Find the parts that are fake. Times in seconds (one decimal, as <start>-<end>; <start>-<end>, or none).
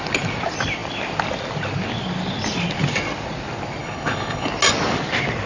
3.8-4.5